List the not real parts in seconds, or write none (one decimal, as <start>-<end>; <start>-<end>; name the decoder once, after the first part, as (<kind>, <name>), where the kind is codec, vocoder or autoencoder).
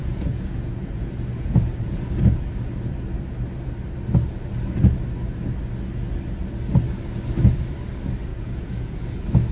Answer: 0.0-2.4 (vocoder, Vocos); 8.3-9.0